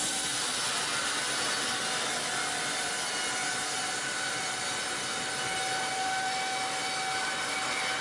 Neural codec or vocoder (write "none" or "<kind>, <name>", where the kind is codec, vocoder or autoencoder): none